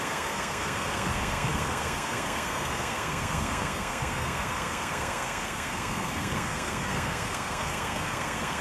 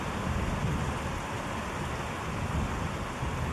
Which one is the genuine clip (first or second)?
second